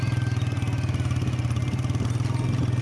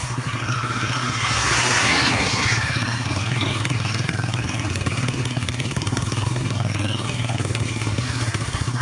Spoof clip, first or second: second